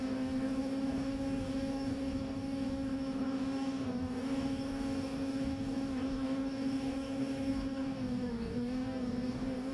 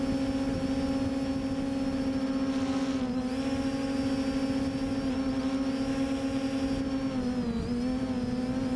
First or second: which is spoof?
first